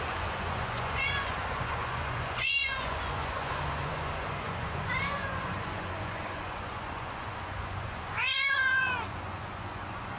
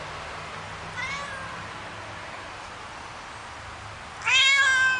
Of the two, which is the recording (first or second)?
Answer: second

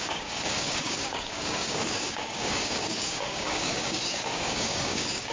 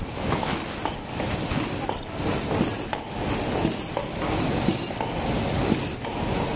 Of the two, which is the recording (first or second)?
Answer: second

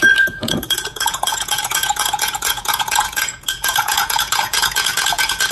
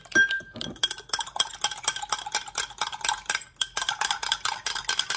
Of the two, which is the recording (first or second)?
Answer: second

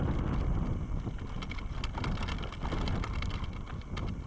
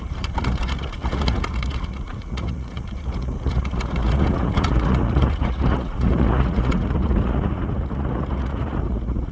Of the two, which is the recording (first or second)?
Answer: first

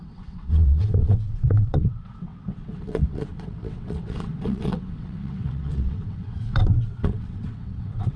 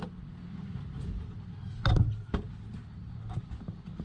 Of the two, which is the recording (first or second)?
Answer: second